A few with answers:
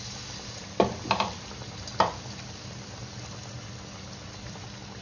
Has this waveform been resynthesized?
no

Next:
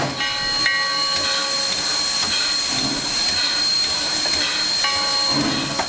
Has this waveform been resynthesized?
no